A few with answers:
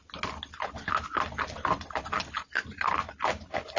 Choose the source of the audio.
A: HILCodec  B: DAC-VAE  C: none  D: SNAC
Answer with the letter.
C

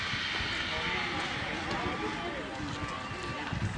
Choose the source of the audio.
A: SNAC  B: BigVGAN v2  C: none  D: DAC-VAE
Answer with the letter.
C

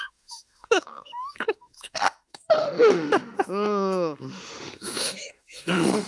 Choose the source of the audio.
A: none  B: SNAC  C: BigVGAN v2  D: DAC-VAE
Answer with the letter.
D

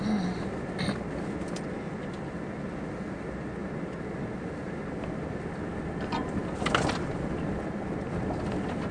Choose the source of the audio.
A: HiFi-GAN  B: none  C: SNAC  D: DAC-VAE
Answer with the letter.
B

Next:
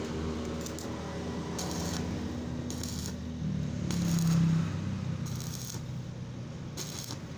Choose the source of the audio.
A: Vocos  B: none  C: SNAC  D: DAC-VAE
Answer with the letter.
B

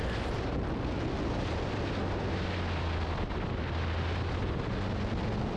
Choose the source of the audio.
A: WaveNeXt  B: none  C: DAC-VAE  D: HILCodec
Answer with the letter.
B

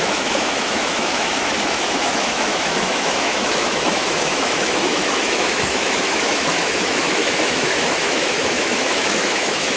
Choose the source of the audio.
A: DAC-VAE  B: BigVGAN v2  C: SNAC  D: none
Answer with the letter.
A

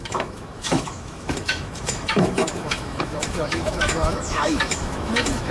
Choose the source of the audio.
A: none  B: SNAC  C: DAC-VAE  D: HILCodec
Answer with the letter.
C